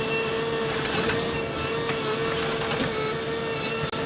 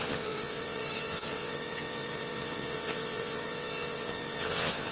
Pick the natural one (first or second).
first